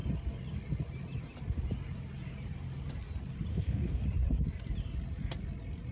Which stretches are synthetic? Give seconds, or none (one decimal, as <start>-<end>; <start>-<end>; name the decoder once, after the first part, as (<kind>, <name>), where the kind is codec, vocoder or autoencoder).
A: 3.5-4.0 (codec, DAC)